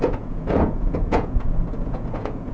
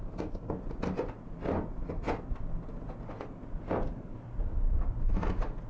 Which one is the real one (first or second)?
second